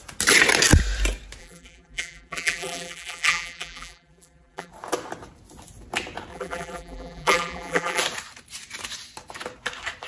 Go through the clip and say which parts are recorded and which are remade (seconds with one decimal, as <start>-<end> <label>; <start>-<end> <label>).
0.0-1.4 recorded; 1.4-4.7 remade; 4.7-6.3 recorded; 6.3-8.0 remade; 8.0-10.1 recorded